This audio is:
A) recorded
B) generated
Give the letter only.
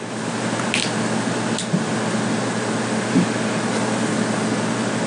A